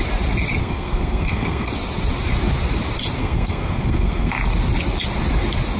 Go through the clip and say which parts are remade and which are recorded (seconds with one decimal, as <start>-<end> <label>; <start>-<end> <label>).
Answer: 0.0-0.6 recorded; 0.6-1.7 remade; 1.7-3.2 recorded; 3.2-4.3 remade; 4.3-5.8 recorded